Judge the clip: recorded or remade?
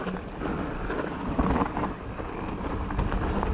recorded